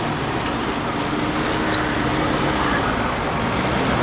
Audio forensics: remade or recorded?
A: recorded